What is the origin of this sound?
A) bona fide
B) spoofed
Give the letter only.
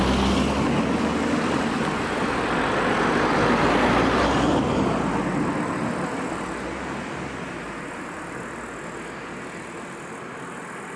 A